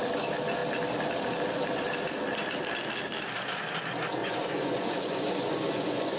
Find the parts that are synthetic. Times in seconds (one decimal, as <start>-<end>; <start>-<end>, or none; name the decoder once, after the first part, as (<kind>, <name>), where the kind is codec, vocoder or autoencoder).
4.2-6.2 (vocoder, Vocos)